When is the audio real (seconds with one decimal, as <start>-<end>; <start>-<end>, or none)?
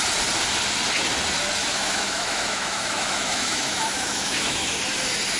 0.0-1.6; 4.8-5.4